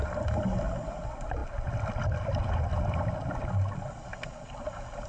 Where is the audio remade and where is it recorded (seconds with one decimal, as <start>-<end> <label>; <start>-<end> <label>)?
0.0-5.1 recorded